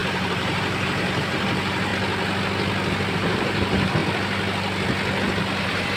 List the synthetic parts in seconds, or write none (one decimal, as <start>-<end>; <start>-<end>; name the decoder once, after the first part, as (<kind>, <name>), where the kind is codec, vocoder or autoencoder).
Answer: 0.0-1.9 (vocoder, BigVGAN v2); 3.1-4.0; 5.6-6.0